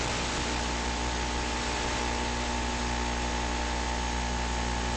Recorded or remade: recorded